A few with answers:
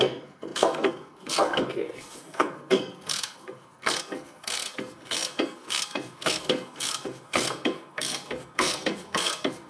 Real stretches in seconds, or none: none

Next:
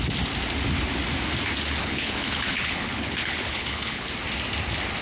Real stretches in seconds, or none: 0.0-1.8; 4.1-5.0

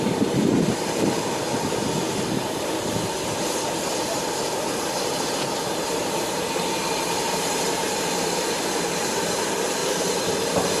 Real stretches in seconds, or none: 1.5-2.4

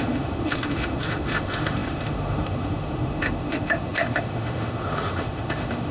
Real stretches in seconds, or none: none